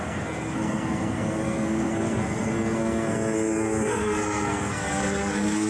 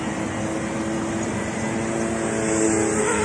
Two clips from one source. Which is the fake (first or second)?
first